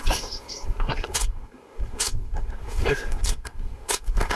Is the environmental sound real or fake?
fake